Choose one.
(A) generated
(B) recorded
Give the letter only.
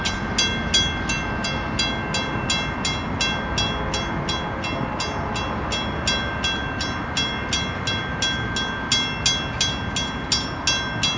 B